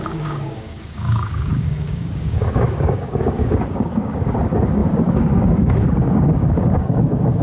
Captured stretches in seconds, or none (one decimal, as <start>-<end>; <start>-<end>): none